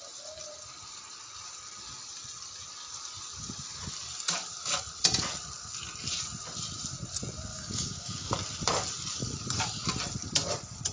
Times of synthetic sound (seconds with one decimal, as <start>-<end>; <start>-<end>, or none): 7.5-8.3